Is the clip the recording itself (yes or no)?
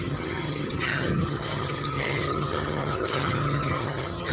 no